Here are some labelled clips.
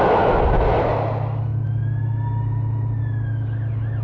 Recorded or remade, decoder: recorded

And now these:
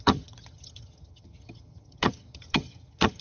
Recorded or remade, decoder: remade, vocoder, HiFi-GAN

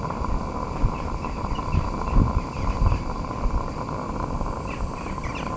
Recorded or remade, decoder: recorded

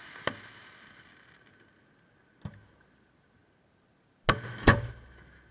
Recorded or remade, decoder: recorded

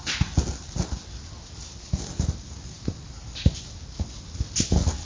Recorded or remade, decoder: recorded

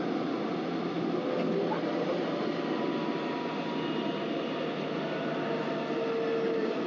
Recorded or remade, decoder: recorded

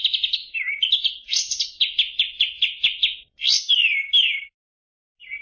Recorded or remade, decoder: recorded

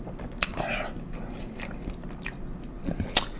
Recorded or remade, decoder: recorded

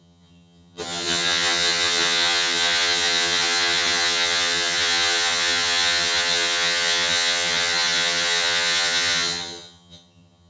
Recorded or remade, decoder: remade, vocoder, HiFi-GAN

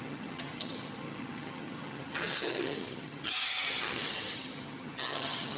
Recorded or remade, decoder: remade, vocoder, HiFi-GAN